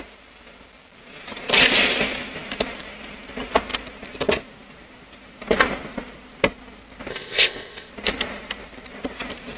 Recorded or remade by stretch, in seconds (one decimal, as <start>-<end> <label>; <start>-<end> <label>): 0.0-7.1 recorded; 7.1-7.9 remade; 7.9-9.6 recorded